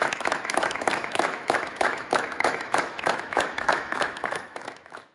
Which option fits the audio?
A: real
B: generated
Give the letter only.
B